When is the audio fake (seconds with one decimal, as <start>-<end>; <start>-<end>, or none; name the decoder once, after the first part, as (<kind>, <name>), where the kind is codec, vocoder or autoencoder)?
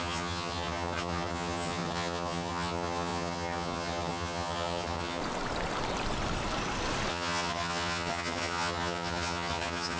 0.0-5.2 (vocoder, HiFi-GAN); 7.1-10.0